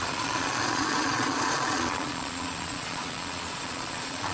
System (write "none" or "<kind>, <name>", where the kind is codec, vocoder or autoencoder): vocoder, Vocos